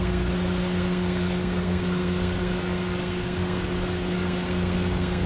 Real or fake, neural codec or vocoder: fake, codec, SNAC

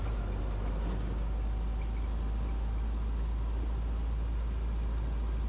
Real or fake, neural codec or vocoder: real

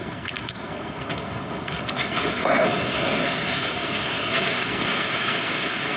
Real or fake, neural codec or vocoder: fake, codec, SNAC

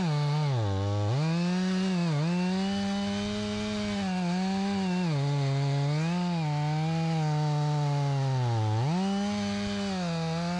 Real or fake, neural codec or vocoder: real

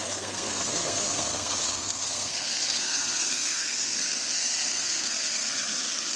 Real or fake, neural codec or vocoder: fake, codec, SNAC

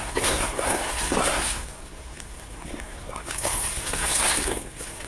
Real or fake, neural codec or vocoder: fake, codec, SNAC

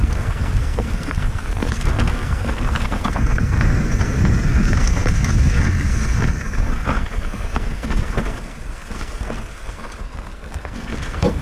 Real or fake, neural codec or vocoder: fake, codec, SNAC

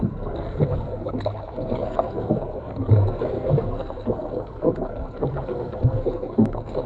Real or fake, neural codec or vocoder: fake, codec, SNAC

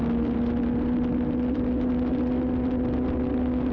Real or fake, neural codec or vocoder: real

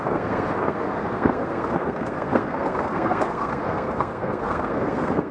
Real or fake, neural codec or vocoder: fake, codec, SNAC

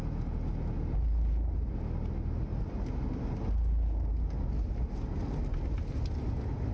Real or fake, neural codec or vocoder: real